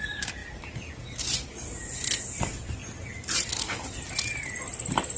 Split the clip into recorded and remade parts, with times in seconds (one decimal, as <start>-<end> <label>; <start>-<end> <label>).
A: 0.0-5.2 recorded